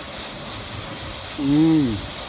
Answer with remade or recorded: recorded